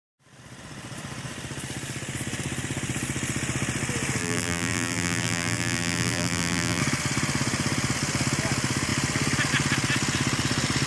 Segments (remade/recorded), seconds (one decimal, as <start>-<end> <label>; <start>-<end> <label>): 0.0-4.2 recorded; 4.2-6.8 remade; 6.8-10.9 recorded